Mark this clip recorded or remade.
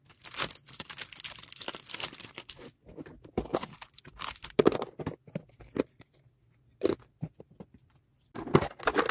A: recorded